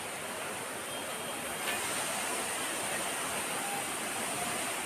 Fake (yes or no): no